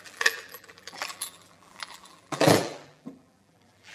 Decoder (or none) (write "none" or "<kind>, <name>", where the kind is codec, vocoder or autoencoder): vocoder, BigVGAN v2